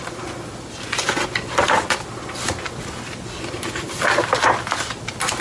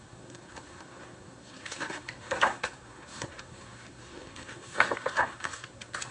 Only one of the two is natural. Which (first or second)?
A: first